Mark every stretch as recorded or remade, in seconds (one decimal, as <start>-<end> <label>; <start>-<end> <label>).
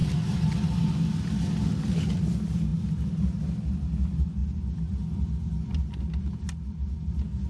0.0-7.5 recorded